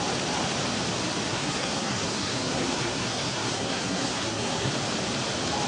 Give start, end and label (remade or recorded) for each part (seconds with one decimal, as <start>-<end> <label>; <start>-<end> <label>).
0.0-1.3 recorded; 1.3-4.7 remade; 4.7-5.7 recorded